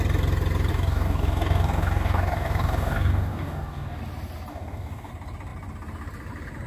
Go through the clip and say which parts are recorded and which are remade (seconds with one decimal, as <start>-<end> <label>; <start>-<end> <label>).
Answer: 0.0-0.7 recorded; 0.7-4.0 remade; 4.0-4.5 recorded; 4.5-5.1 remade; 5.1-6.7 recorded